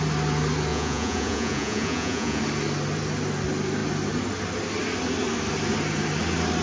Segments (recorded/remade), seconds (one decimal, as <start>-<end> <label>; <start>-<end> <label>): 0.0-0.7 recorded; 0.7-2.4 remade; 2.4-6.6 recorded